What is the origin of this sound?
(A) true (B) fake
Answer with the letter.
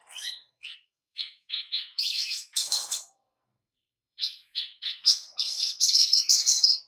B